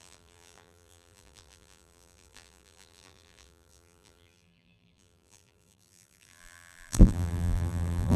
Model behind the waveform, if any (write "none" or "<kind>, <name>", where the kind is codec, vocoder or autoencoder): vocoder, BigVGAN v2